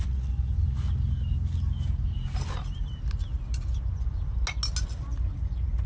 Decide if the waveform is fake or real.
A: real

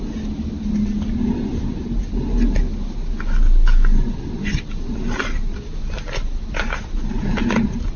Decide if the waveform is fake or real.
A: real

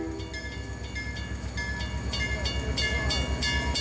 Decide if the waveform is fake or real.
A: real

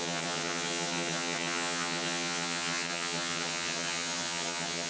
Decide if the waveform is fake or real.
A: fake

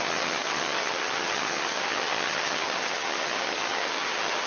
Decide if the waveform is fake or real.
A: fake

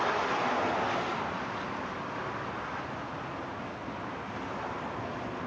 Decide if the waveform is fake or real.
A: real